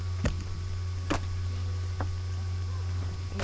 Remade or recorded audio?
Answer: recorded